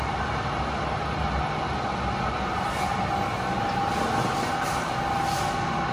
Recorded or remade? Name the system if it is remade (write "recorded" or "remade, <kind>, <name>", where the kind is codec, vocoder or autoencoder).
recorded